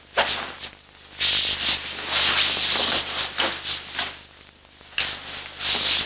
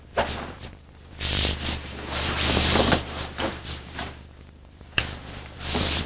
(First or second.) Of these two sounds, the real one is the first